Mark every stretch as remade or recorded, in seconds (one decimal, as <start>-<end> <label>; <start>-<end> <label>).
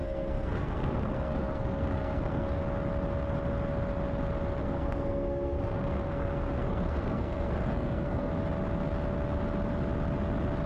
0.0-2.6 remade; 2.6-4.6 recorded; 4.6-8.3 remade; 8.3-10.7 recorded